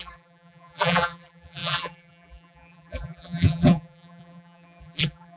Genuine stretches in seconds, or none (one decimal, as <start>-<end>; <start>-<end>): none